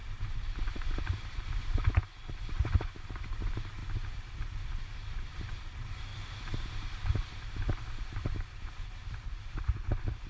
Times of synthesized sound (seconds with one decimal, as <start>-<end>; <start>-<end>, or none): 0.0-3.8; 5.1-10.3